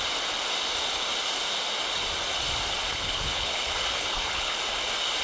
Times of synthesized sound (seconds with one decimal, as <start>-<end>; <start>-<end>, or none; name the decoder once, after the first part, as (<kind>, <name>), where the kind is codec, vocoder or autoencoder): 2.9-4.6 (codec, HILCodec)